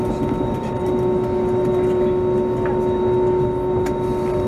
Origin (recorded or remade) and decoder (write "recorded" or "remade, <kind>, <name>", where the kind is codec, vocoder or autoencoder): recorded